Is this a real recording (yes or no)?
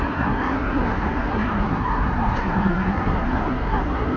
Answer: no